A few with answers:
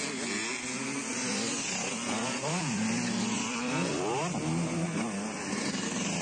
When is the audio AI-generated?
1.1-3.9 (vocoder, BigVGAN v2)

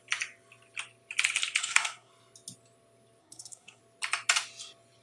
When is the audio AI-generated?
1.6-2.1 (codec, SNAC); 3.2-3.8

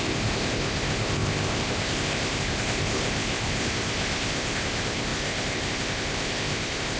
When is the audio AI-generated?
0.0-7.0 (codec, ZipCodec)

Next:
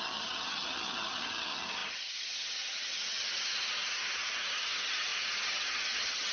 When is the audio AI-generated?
0.0-6.3 (vocoder, HiFi-GAN)